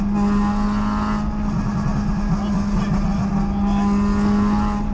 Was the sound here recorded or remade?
recorded